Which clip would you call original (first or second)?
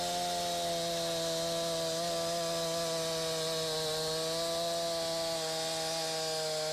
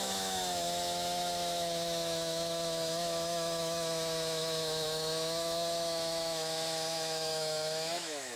first